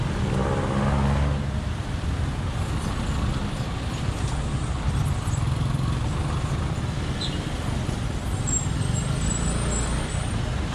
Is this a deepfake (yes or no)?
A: no